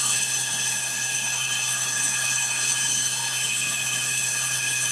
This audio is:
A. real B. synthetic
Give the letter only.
B